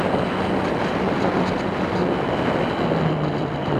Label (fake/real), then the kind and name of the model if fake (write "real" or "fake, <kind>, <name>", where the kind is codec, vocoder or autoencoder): real